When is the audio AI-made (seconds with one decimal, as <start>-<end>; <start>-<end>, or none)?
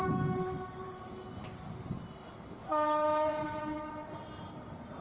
2.6-3.9